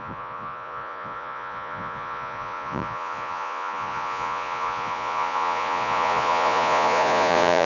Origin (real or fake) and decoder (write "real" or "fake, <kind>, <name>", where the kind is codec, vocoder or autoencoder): fake, vocoder, Vocos